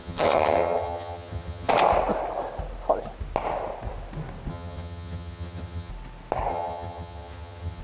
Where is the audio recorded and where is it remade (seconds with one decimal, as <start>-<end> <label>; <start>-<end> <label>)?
0.0-1.7 remade; 1.7-4.5 recorded; 4.5-5.9 remade; 5.9-6.5 recorded; 6.5-7.8 remade